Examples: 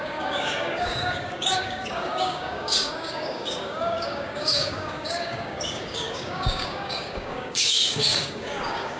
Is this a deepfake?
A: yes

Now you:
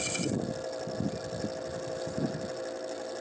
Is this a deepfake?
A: no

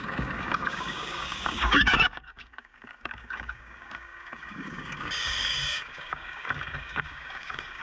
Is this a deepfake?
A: yes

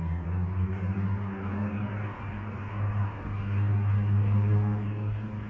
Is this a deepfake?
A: yes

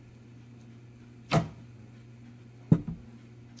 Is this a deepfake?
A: no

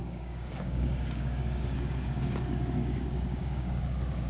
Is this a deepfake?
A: yes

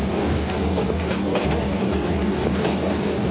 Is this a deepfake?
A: yes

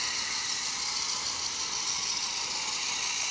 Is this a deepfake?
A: no